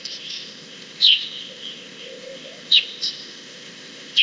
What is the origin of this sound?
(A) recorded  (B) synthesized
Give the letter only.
B